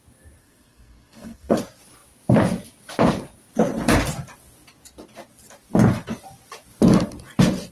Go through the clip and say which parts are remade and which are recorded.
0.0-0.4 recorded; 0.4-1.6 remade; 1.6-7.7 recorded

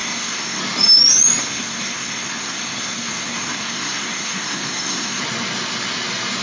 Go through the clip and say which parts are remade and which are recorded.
0.0-0.6 remade; 0.6-1.4 recorded; 1.4-5.2 remade; 5.2-6.4 recorded

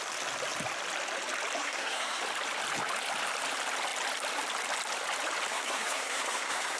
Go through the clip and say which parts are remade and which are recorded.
0.0-1.6 recorded; 1.6-2.2 remade; 2.2-5.5 recorded; 5.5-6.8 remade

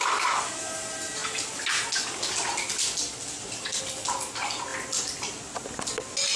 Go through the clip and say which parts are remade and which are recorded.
0.0-6.4 recorded